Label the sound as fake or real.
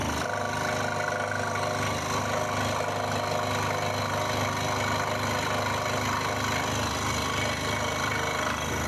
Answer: real